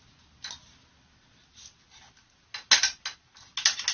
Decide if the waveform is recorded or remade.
recorded